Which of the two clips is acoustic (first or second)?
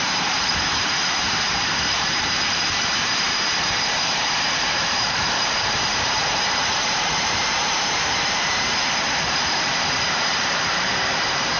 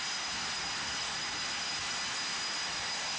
second